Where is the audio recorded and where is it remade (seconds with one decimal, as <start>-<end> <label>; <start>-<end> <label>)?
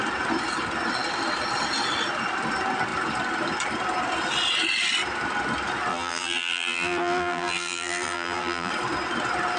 0.0-5.9 recorded; 5.9-8.7 remade; 8.7-9.6 recorded